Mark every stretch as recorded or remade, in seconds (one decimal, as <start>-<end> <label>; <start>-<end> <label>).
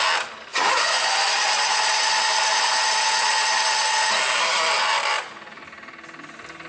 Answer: 0.0-0.5 recorded; 0.5-1.3 remade; 1.3-6.7 recorded